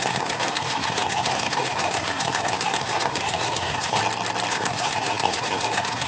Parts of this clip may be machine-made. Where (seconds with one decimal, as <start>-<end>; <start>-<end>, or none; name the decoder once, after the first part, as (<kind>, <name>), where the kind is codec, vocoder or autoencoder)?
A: 0.0-4.0 (codec, SNAC); 4.5-6.1